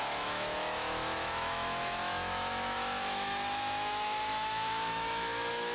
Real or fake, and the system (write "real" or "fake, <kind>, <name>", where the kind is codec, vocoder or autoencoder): fake, autoencoder, DAC-VAE